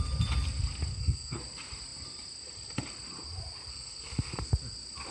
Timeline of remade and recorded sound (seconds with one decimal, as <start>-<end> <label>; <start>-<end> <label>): 0.0-0.9 recorded; 0.9-1.4 remade; 1.4-3.7 recorded; 3.7-4.5 remade; 4.5-5.1 recorded